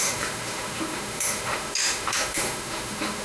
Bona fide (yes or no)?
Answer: no